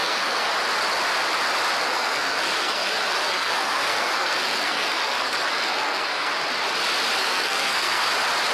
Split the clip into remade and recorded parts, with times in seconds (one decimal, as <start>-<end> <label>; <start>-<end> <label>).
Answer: 0.0-0.5 remade; 0.5-1.8 recorded; 1.8-6.3 remade; 6.3-7.2 recorded; 7.2-8.1 remade; 8.1-8.5 recorded